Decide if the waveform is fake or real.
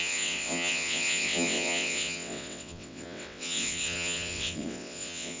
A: fake